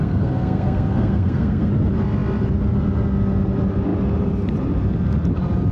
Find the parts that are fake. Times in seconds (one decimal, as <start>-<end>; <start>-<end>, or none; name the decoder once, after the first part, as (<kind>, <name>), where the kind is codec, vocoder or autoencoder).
0.0-1.7 (codec, SNAC)